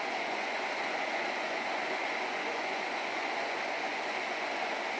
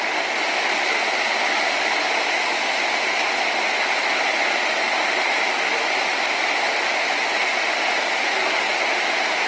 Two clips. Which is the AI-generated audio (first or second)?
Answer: first